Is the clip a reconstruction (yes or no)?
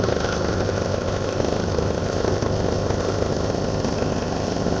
yes